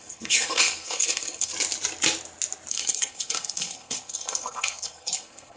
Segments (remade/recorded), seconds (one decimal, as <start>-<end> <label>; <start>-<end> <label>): 0.0-1.5 remade; 1.5-2.7 recorded; 2.7-5.6 remade